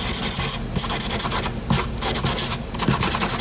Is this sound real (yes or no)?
yes